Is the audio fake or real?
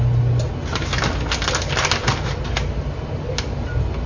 real